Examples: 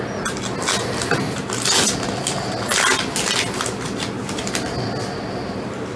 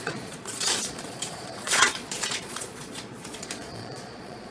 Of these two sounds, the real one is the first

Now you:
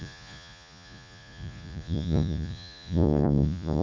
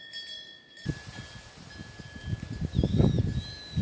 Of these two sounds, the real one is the second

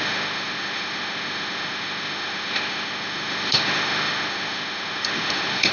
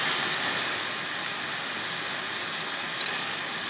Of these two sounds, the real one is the second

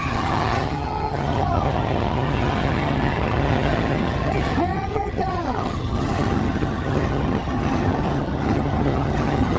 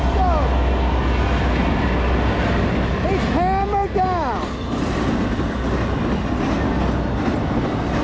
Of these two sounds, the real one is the second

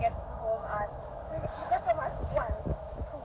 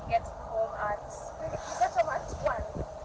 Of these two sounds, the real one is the second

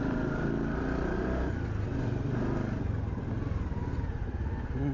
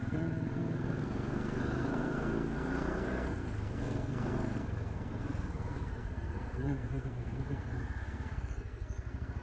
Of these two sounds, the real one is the first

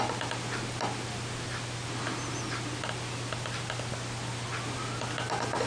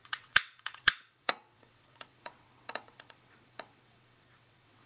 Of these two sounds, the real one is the first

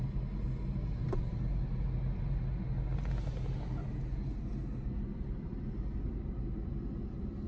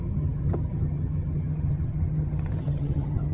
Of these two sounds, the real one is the first